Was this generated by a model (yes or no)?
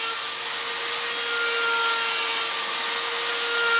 no